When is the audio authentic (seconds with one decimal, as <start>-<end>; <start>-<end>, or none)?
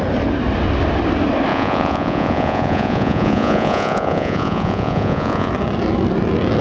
0.0-1.5; 5.5-6.6